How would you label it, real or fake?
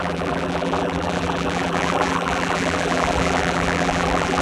fake